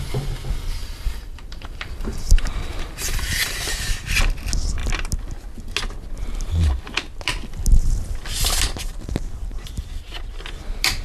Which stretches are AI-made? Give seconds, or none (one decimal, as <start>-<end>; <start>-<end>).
0.8-4.1